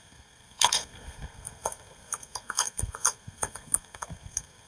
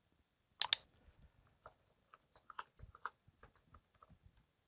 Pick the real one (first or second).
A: second